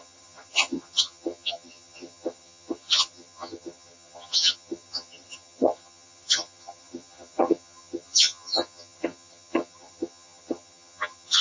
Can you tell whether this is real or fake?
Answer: fake